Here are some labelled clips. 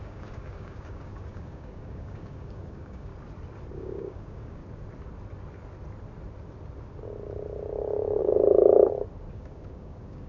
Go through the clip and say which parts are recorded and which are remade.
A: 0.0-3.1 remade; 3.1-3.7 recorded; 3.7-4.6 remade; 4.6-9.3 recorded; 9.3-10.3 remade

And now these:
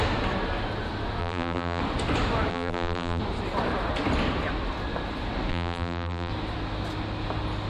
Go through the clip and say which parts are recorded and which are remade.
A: 0.0-1.2 recorded; 1.2-1.8 remade; 1.8-2.5 recorded; 2.5-3.2 remade; 3.2-5.5 recorded; 5.5-6.3 remade; 6.3-7.7 recorded